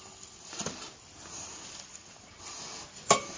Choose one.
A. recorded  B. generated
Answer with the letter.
A